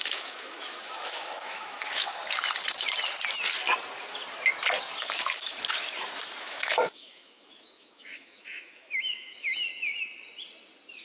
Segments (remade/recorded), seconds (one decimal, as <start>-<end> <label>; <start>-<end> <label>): 0.0-2.2 remade; 2.2-5.0 recorded; 5.0-5.5 remade; 5.5-6.4 recorded; 6.4-9.7 remade; 9.7-11.0 recorded